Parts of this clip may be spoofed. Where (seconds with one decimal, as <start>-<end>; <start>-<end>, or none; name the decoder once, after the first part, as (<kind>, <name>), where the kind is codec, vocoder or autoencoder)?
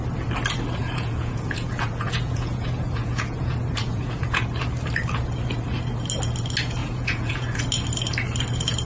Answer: 0.8-4.4 (vocoder, Vocos); 6.8-7.6